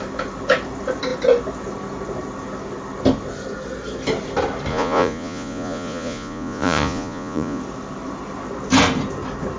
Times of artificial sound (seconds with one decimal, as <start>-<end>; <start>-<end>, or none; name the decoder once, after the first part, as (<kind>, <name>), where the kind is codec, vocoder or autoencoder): 4.7-7.6 (vocoder, Vocos)

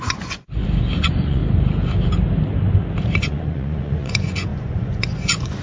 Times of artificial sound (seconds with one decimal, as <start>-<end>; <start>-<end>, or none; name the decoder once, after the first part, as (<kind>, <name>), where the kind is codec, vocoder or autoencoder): 0.0-1.4 (vocoder, Vocos); 3.2-5.6

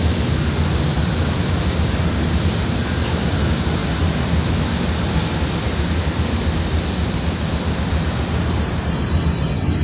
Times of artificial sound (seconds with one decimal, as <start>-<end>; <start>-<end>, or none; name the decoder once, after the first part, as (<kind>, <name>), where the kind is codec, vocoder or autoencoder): none

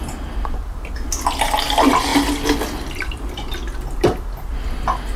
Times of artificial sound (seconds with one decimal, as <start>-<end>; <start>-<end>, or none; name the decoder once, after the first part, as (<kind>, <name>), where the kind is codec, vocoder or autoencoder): none

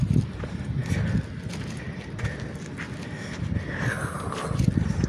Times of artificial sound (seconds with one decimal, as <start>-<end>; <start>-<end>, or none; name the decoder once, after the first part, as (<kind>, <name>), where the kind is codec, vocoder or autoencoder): none

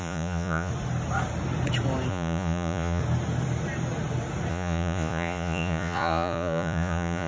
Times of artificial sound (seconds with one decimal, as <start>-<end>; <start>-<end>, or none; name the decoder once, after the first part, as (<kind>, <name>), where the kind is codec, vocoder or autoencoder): 0.0-0.7 (vocoder, Vocos); 2.1-3.0; 4.5-7.3

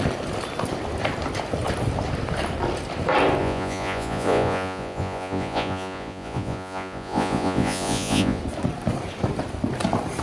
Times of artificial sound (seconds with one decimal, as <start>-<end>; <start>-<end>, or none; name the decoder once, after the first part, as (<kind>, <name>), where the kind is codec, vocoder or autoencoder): 3.4-8.4 (vocoder, Vocos)

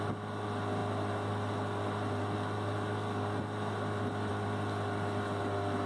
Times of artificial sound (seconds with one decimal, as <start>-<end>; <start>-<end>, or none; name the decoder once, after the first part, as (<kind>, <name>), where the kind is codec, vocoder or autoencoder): none